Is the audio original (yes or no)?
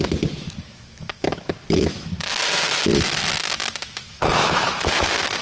no